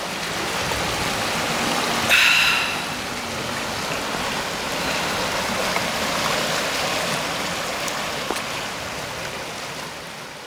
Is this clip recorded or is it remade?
recorded